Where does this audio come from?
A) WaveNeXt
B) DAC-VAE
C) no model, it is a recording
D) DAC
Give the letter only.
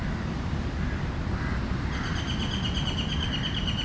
C